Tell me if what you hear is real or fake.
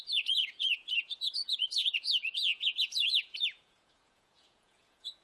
fake